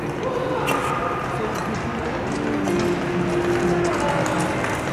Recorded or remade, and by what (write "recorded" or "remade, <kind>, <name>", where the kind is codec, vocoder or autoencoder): recorded